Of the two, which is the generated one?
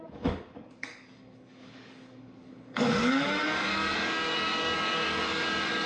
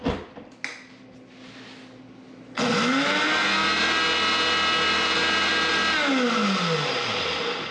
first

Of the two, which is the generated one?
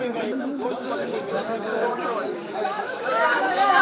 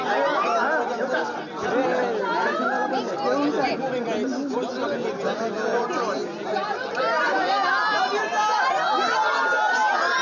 first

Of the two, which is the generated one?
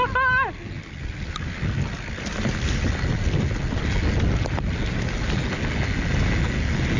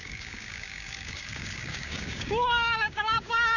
second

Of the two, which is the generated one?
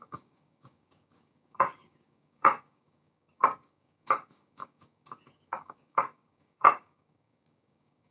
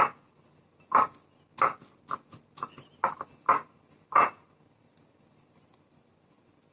first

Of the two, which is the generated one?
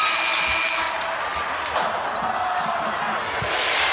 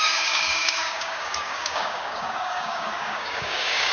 second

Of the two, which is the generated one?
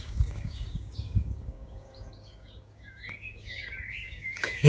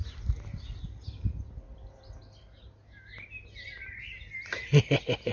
first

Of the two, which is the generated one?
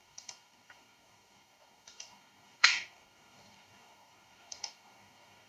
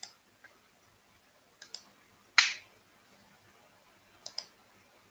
first